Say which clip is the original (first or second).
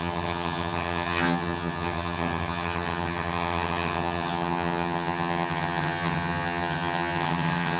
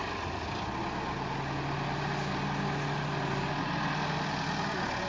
second